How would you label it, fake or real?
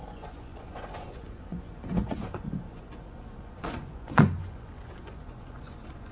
fake